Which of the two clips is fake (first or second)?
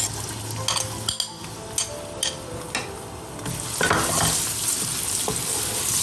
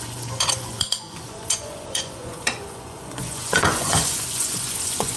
second